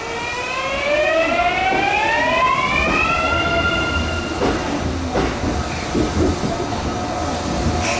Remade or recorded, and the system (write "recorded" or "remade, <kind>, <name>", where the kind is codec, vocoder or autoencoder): recorded